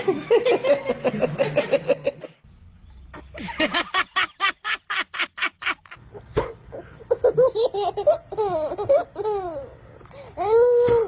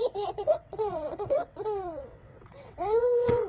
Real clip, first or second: first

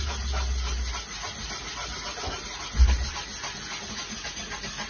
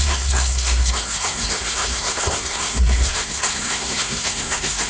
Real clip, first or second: first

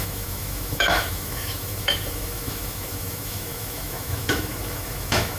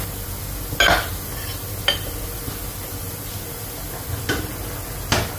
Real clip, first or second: second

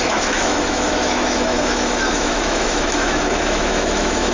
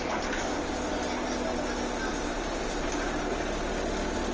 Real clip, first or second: second